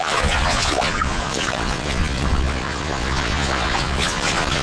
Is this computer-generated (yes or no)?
yes